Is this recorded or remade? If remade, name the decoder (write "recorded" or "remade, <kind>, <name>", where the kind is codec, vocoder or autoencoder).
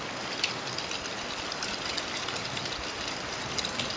recorded